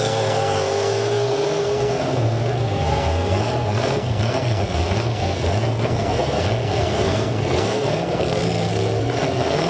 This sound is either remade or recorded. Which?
remade